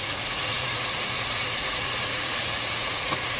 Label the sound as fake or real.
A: fake